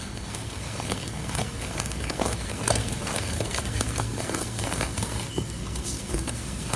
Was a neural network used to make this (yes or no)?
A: yes